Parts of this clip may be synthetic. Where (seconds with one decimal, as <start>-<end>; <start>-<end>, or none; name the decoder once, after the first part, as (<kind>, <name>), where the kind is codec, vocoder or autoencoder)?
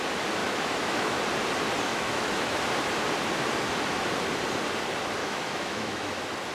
0.4-1.2 (autoencoder, DAC-VAE); 1.9-2.6; 5.2-6.1